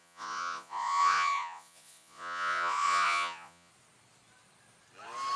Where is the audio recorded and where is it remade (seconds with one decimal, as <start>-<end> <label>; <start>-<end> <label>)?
0.0-3.7 remade; 3.7-5.4 recorded